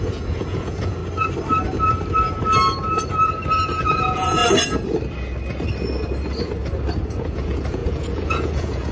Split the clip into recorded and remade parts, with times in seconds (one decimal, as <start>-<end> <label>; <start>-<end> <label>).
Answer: 0.0-1.0 remade; 1.0-3.8 recorded; 3.8-4.4 remade; 4.4-7.1 recorded; 7.1-8.9 remade